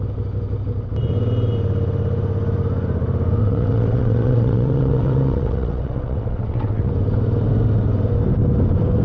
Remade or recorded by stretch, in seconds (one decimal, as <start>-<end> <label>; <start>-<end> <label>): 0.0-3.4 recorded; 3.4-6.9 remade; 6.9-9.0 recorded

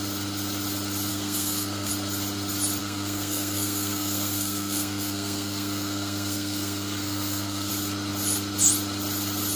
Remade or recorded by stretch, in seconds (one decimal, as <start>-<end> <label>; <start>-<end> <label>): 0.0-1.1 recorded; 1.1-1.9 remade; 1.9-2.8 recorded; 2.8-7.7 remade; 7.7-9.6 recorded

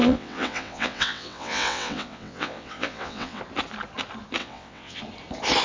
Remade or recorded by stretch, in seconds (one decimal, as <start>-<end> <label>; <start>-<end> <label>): 0.0-3.4 remade; 3.4-4.4 recorded; 4.4-5.0 remade; 5.0-5.6 recorded